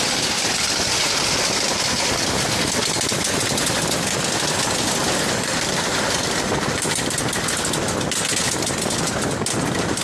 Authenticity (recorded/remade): recorded